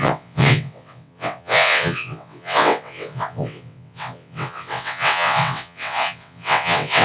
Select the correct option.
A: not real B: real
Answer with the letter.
A